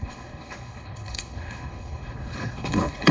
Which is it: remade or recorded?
remade